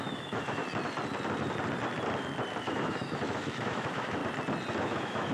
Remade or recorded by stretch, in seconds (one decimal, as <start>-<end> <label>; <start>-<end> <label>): 0.0-0.6 remade; 0.6-2.6 recorded; 2.6-4.2 remade; 4.2-4.8 recorded; 4.8-5.3 remade